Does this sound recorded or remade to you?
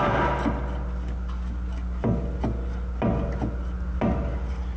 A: recorded